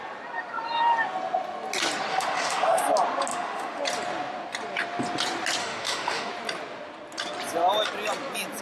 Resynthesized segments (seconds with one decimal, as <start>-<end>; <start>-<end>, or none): 2.1-2.8; 3.3-3.8; 5.6-6.3